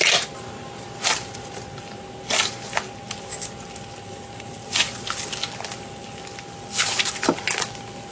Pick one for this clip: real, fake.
real